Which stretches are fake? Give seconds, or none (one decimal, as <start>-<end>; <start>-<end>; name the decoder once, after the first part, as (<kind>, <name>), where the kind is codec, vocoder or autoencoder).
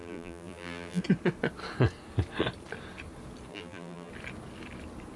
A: 0.0-1.0 (vocoder, BigVGAN v2); 3.5-4.1